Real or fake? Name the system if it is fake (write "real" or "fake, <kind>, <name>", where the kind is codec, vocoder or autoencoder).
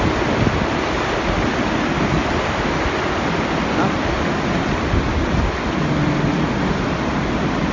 real